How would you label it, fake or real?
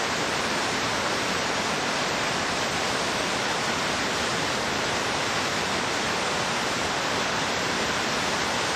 real